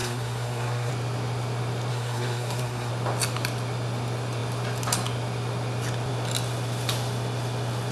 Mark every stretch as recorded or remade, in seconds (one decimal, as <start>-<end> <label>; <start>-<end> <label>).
0.0-0.9 remade; 0.9-1.9 recorded; 1.9-2.9 remade; 2.9-7.9 recorded